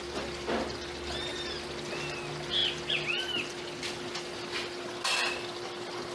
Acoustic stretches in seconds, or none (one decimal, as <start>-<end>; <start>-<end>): 0.0-6.1